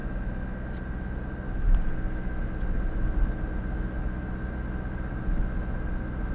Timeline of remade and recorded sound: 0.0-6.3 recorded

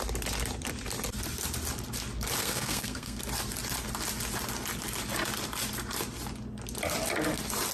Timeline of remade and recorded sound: 0.0-2.4 recorded; 2.4-3.2 remade; 3.2-7.7 recorded

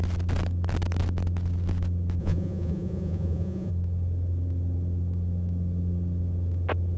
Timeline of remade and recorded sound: 0.0-2.2 recorded; 2.2-3.7 remade; 3.7-7.0 recorded

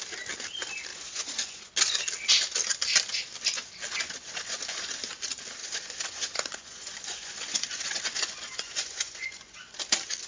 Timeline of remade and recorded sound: 0.0-0.9 recorded; 0.9-1.7 remade; 1.7-3.9 recorded; 3.9-5.0 remade; 5.0-5.6 recorded; 5.6-9.8 remade; 9.8-10.3 recorded

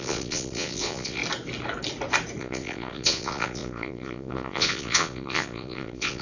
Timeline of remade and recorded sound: 0.0-1.2 remade; 1.2-2.4 recorded; 2.4-6.2 remade

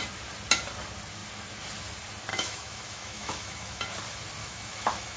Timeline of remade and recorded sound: 0.0-2.3 recorded; 2.3-3.8 remade; 3.8-4.4 recorded; 4.4-5.2 remade

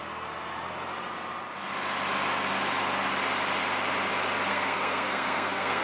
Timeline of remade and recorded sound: 0.0-4.5 recorded; 4.5-5.8 remade